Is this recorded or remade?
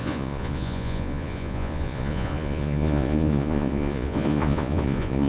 remade